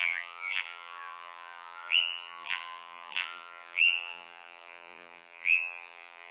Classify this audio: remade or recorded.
remade